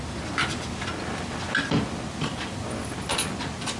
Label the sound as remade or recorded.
recorded